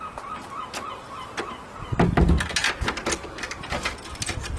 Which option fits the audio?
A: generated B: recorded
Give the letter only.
B